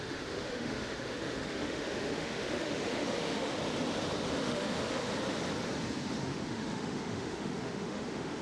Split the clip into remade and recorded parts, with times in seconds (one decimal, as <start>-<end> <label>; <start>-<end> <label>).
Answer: 0.0-3.6 remade; 3.6-4.4 recorded; 4.4-5.1 remade; 5.1-6.1 recorded; 6.1-8.4 remade